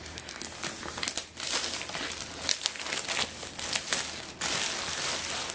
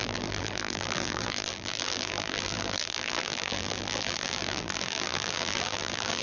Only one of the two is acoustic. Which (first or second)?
first